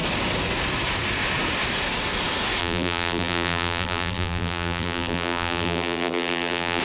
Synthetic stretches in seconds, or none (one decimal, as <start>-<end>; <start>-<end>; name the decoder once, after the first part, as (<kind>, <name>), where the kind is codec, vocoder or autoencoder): 2.6-6.8 (vocoder, BigVGAN v2)